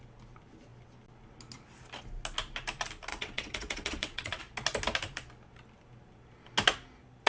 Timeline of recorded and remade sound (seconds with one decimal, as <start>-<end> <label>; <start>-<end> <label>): 0.0-3.1 recorded; 3.1-4.4 remade; 4.4-7.3 recorded